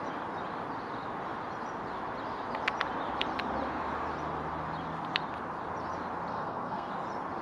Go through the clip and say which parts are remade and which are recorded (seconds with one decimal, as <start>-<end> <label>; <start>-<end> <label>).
0.0-6.3 recorded; 6.3-6.9 remade; 6.9-7.4 recorded